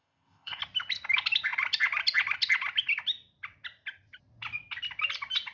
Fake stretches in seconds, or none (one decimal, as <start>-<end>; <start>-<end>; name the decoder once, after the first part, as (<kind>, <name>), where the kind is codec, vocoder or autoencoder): 0.0-0.6 (codec, ZipCodec)